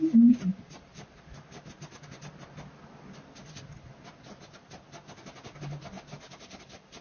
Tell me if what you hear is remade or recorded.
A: recorded